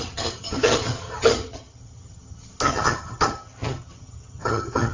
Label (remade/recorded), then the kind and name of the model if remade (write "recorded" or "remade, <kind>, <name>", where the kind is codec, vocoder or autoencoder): remade, vocoder, HiFi-GAN